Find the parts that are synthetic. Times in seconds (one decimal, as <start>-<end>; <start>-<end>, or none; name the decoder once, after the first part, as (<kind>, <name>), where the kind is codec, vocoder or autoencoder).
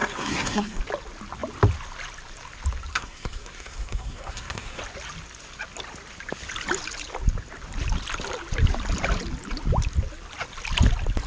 0.0-0.8 (codec, SNAC); 2.9-4.8